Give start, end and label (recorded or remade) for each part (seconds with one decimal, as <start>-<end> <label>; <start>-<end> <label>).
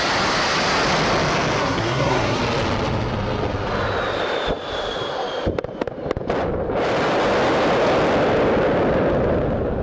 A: 0.0-1.6 recorded; 1.6-2.4 remade; 2.4-9.8 recorded